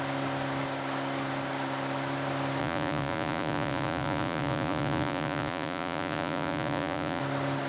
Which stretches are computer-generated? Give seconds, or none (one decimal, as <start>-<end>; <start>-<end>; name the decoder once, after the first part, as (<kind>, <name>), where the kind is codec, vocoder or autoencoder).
2.6-7.2 (vocoder, Vocos)